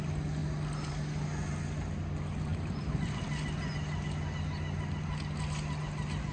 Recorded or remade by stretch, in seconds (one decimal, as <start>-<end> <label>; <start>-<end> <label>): 0.0-6.3 recorded